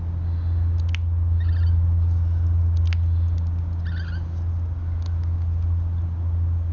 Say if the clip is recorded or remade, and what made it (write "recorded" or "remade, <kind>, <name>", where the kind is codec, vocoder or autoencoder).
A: recorded